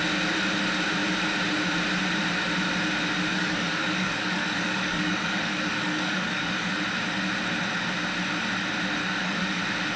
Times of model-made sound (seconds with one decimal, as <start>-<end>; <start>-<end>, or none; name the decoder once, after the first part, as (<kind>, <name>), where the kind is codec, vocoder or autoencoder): 3.3-6.7 (codec, DAC); 9.0-9.6